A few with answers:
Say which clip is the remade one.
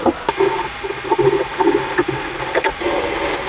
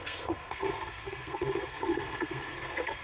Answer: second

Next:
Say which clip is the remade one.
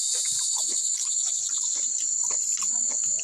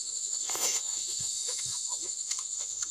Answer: second